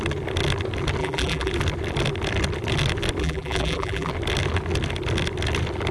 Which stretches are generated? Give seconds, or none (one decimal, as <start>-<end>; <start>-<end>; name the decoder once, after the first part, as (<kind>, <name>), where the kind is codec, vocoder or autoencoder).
1.0-1.5 (vocoder, BigVGAN v2); 3.2-4.1